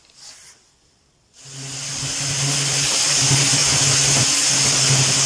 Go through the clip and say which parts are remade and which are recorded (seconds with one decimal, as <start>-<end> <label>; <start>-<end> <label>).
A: 0.0-5.3 recorded